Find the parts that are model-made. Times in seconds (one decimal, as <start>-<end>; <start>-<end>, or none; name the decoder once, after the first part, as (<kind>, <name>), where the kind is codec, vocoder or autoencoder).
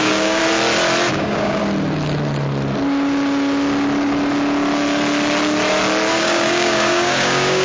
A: 0.0-0.4 (codec, DAC); 1.1-1.6; 6.2-7.6